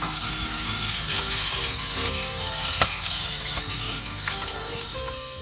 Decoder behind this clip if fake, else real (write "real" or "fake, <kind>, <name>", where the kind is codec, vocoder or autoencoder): fake, codec, SNAC